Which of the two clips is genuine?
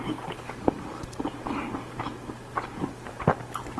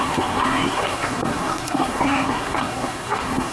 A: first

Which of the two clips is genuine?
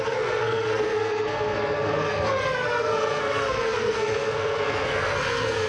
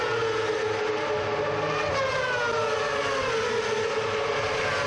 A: second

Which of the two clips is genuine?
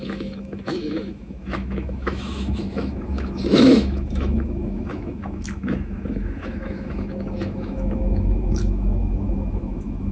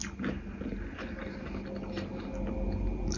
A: second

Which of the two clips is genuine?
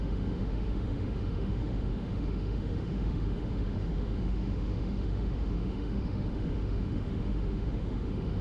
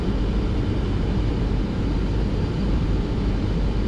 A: second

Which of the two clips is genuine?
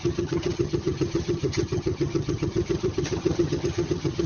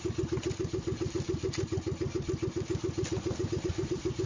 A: second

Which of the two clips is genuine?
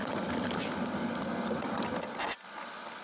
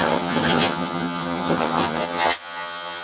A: first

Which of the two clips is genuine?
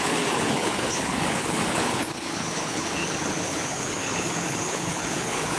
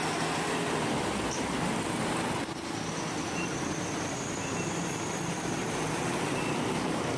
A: second